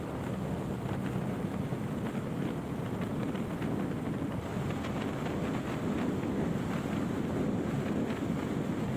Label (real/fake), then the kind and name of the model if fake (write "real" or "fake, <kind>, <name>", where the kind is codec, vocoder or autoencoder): real